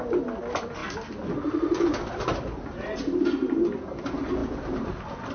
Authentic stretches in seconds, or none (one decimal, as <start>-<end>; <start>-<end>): 0.0-5.3